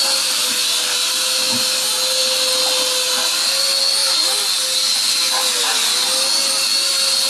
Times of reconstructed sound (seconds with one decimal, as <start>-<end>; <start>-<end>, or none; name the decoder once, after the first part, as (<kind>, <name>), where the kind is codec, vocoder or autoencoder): none